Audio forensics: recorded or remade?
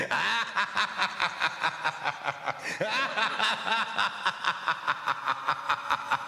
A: recorded